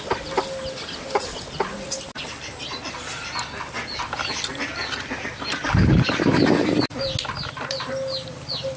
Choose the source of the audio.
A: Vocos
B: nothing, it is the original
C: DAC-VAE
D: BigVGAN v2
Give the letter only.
B